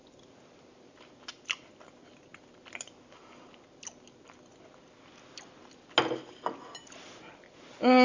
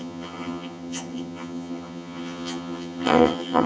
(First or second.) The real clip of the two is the first